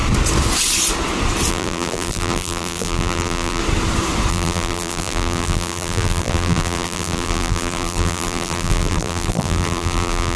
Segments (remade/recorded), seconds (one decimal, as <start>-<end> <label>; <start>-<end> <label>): 0.0-1.5 recorded; 1.5-3.6 remade; 3.6-4.3 recorded; 4.3-10.4 remade